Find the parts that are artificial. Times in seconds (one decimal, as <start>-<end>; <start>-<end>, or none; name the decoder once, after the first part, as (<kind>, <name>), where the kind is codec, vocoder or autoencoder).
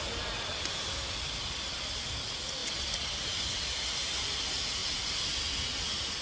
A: none